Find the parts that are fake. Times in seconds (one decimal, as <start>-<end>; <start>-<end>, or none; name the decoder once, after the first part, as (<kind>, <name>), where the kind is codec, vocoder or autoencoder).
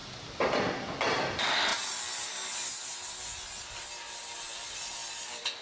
none